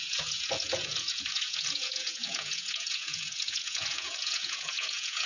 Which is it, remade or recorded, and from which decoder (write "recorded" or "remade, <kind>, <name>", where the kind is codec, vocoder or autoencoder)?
remade, vocoder, Vocos